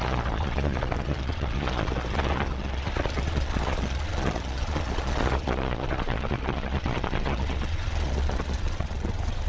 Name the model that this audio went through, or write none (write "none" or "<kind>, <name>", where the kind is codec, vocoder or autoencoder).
vocoder, Vocos